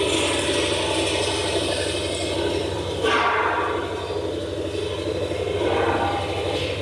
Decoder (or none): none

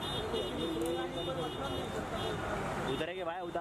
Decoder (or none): none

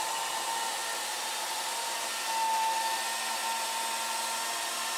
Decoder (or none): none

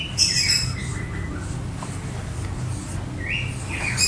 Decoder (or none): none